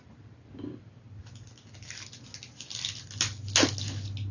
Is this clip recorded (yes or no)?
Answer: yes